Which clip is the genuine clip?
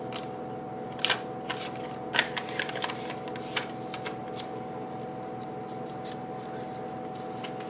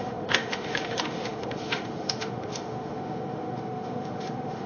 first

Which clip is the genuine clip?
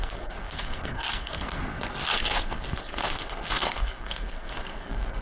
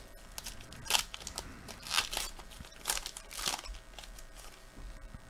second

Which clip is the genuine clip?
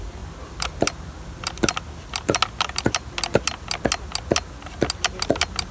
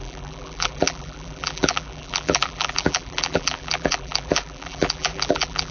first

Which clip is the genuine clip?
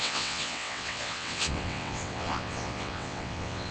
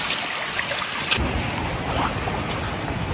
second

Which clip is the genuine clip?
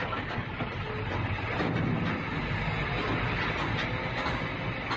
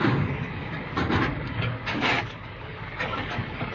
first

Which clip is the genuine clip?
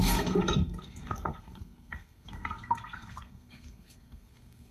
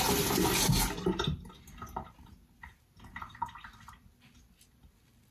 second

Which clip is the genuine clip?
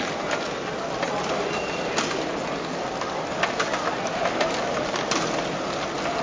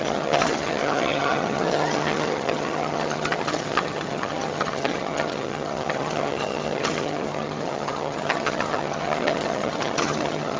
first